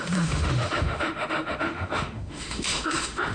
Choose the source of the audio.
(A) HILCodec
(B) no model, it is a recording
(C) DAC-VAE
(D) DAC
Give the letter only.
C